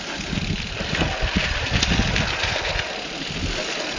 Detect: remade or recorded recorded